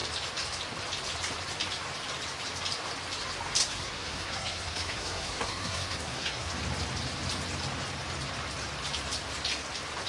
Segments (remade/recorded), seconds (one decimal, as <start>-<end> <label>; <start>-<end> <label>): 0.0-3.6 recorded; 3.6-6.5 remade; 6.5-10.1 recorded